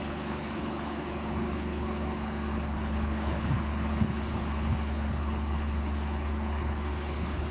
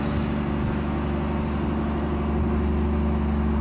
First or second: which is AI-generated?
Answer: first